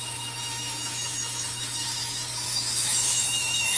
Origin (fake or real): fake